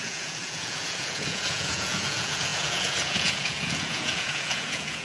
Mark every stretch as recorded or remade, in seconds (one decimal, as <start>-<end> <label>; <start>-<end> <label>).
0.0-5.0 remade